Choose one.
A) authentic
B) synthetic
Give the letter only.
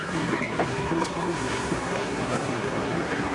B